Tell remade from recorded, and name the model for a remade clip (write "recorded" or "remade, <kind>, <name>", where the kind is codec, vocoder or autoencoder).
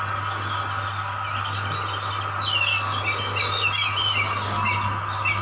recorded